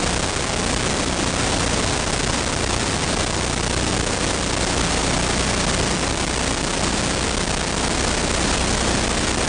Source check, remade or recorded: recorded